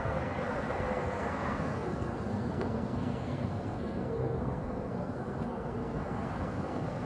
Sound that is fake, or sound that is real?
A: fake